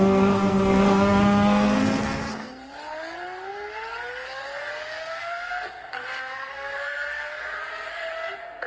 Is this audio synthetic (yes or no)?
yes